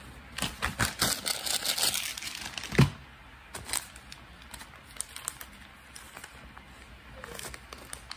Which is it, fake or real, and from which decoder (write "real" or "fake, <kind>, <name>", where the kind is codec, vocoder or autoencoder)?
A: real